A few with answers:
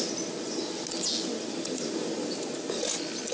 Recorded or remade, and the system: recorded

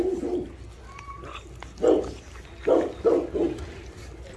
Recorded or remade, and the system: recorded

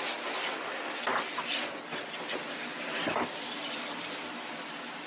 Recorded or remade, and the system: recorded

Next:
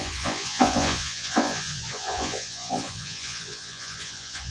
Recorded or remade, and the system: remade, vocoder, Vocos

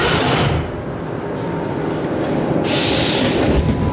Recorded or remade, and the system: recorded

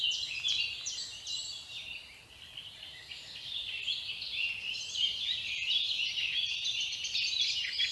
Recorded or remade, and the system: recorded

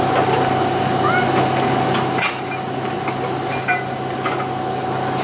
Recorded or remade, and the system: recorded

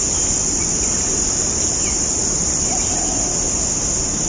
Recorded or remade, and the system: recorded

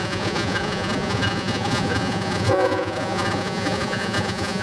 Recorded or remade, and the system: remade, vocoder, Vocos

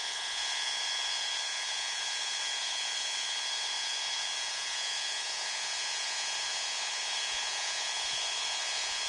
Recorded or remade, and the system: remade, vocoder, Vocos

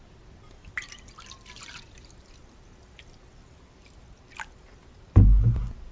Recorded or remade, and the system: recorded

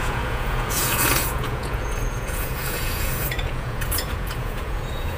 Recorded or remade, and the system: remade, vocoder, Vocos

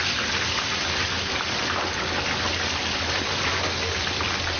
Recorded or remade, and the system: recorded